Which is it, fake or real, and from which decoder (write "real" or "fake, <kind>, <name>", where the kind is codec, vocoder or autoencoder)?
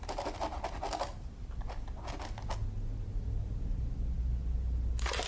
real